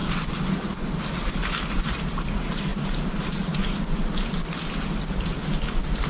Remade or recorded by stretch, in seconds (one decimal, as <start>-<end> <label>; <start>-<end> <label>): 0.0-6.1 recorded